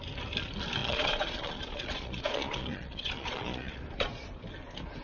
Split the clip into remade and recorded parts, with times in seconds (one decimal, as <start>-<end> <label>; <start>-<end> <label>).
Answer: 0.0-0.8 recorded; 0.8-3.8 remade; 3.8-5.0 recorded